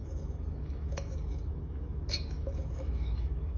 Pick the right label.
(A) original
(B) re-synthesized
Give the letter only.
B